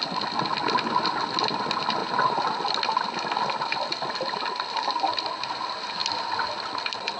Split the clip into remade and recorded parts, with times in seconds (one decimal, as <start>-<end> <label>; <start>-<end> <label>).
0.0-7.2 recorded